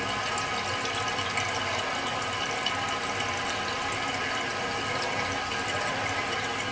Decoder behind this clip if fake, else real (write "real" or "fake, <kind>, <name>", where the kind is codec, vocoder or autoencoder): real